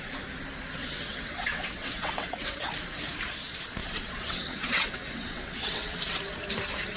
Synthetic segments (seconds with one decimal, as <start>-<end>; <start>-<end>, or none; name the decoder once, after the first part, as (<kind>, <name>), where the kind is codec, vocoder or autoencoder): 0.8-2.6 (vocoder, WaveNeXt); 3.8-6.0